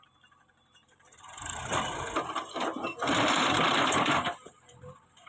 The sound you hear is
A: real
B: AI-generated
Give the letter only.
B